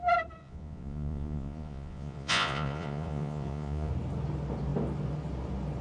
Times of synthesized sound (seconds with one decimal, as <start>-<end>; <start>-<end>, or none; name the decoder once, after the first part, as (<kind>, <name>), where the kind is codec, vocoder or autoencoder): 0.4-3.9 (vocoder, Vocos)

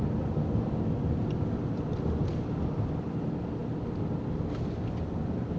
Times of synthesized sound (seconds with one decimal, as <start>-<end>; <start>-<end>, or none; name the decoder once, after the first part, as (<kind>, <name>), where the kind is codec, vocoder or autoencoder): none